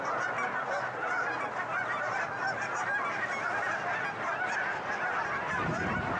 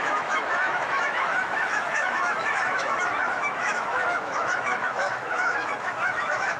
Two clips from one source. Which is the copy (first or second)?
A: second